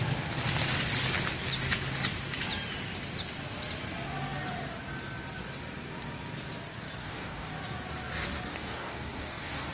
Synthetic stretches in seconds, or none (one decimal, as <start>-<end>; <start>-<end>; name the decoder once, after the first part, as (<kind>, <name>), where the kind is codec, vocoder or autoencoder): 7.0-7.5 (codec, DAC); 8.5-9.7